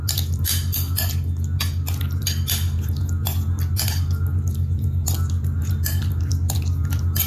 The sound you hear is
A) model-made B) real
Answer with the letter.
B